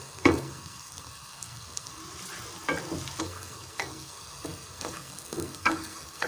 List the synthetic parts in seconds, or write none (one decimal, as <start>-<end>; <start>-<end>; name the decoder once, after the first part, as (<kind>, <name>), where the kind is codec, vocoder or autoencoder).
0.0-2.0 (codec, SNAC); 3.2-6.3